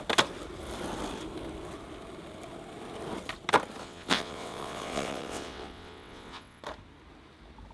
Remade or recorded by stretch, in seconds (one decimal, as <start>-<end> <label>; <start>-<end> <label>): 0.0-3.8 recorded; 3.8-6.6 remade; 6.6-7.7 recorded